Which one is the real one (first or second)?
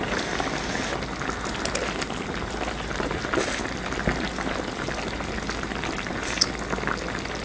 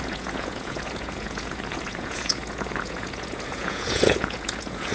first